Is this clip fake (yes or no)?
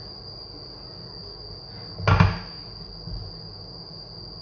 no